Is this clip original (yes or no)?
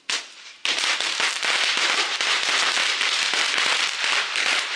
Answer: no